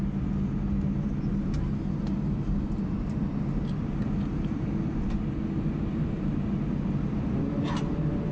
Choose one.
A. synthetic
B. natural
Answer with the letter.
B